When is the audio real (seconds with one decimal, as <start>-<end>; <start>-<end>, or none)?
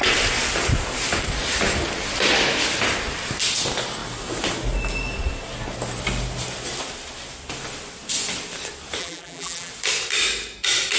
0.0-9.0; 9.7-11.0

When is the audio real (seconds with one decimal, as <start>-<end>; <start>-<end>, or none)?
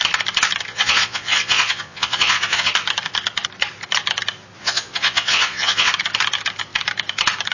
0.0-0.7; 2.7-4.6; 5.9-7.5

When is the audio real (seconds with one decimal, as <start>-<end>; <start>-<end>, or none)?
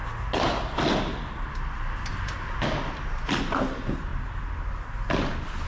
0.0-5.7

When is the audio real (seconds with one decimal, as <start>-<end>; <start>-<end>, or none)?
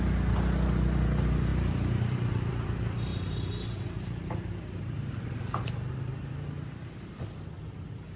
0.0-1.5; 2.5-3.1; 6.9-8.2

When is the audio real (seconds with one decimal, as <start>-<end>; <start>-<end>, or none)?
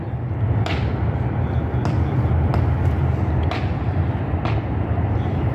0.0-5.5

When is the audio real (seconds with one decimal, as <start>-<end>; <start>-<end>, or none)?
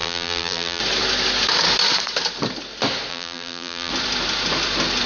0.8-3.1; 3.9-5.1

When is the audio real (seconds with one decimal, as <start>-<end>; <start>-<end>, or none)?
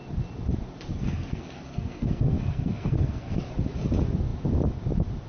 0.0-0.9; 3.5-5.3